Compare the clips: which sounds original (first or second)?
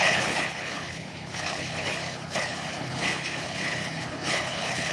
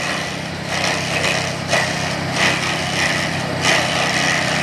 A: second